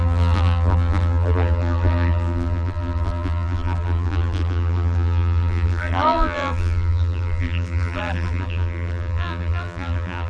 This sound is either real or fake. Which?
fake